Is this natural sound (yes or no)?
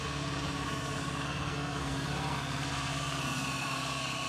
no